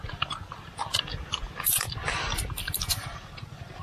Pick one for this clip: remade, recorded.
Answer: recorded